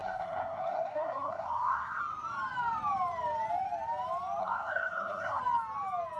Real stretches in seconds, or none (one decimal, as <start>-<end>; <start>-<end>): 2.0-4.4; 5.4-6.2